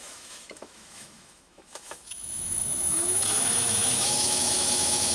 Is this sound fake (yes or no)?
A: yes